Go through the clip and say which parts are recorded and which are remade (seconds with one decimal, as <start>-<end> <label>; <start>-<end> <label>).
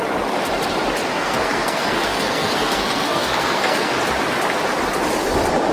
0.0-1.1 recorded; 1.1-3.9 remade; 3.9-5.7 recorded